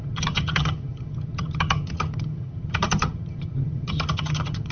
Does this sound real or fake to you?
fake